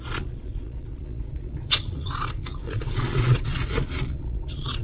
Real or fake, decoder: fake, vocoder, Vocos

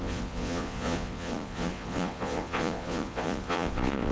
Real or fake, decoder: fake, vocoder, Vocos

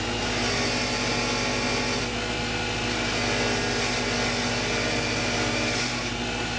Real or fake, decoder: real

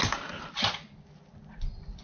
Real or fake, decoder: real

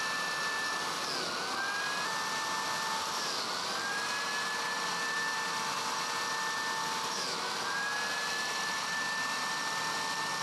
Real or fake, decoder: real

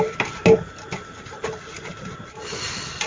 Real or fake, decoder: real